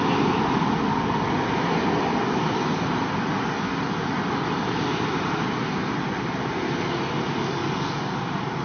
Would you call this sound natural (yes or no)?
yes